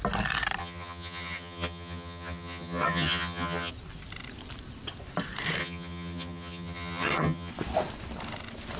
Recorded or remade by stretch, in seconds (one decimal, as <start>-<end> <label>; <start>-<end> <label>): 0.0-0.6 recorded; 0.6-3.7 remade; 3.7-5.6 recorded; 5.6-7.5 remade; 7.5-8.8 recorded